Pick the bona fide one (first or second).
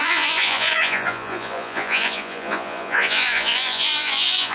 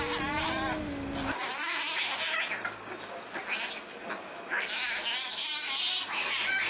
second